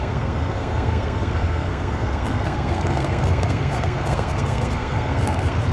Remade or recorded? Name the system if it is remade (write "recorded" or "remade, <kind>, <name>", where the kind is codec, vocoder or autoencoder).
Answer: remade, codec, SNAC